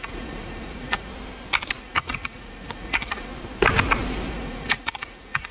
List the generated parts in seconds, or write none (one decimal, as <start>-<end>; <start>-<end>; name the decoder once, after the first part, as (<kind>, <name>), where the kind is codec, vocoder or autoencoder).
0.0-1.1 (vocoder, Vocos); 1.8-3.3; 4.3-5.5